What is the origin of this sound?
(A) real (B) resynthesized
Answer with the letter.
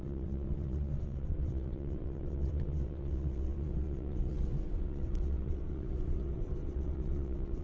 B